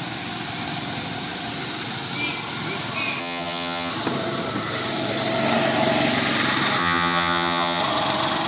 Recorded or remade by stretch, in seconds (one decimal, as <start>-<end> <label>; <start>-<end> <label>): 0.0-3.2 recorded; 3.2-3.9 remade; 3.9-6.8 recorded; 6.8-7.8 remade; 7.8-8.5 recorded